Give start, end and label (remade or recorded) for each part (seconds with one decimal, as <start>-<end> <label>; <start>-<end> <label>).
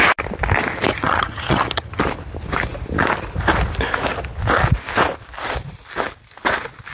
0.0-0.9 recorded; 0.9-2.0 remade; 2.0-6.9 recorded